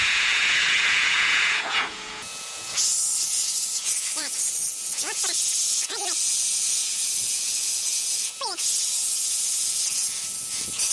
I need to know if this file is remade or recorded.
remade